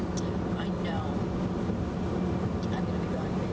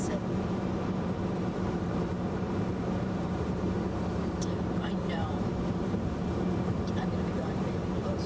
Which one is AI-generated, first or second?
second